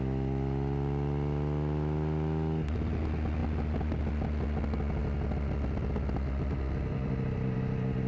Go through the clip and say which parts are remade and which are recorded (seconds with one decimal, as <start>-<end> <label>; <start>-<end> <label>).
0.0-3.4 recorded; 3.4-4.0 remade; 4.0-5.0 recorded; 5.0-8.1 remade